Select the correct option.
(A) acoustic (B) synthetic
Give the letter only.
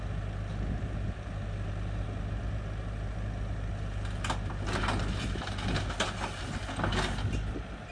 A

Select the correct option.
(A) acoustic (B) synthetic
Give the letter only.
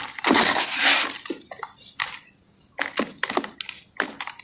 A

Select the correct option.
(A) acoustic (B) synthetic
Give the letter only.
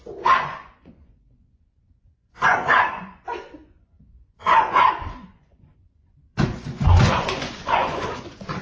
B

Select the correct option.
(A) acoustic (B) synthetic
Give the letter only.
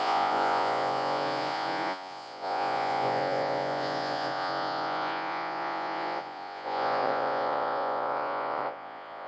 B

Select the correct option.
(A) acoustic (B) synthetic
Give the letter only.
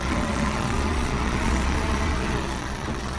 B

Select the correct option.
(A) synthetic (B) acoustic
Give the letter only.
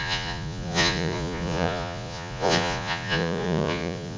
A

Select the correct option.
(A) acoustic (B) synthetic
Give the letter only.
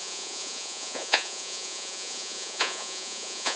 B